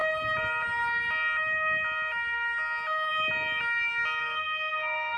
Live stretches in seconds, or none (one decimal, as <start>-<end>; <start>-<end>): 0.0-4.2